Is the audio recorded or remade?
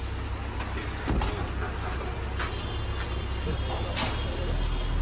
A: recorded